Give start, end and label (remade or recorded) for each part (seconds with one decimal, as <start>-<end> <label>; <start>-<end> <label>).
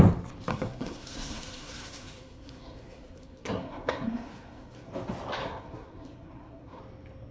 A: 0.0-0.5 recorded; 0.5-4.9 remade; 4.9-5.4 recorded; 5.4-6.8 remade; 6.8-7.3 recorded